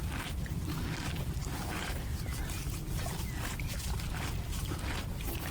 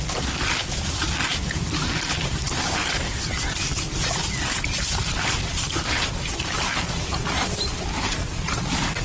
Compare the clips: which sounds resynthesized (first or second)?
second